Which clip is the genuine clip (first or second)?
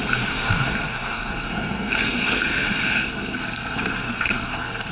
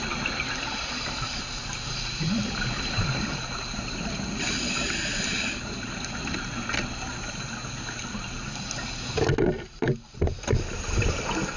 second